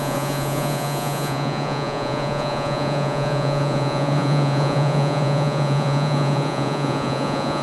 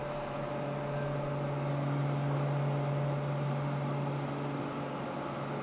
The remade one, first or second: first